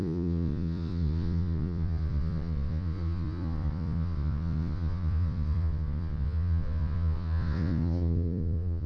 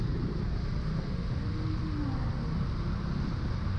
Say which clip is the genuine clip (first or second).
second